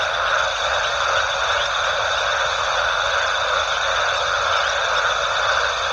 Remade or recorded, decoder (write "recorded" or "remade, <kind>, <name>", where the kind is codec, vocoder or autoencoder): recorded